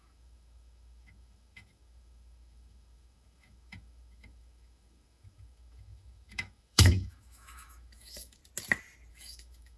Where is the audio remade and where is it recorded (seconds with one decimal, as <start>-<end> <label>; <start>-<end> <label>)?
0.0-8.4 remade; 8.4-9.1 recorded; 9.1-9.8 remade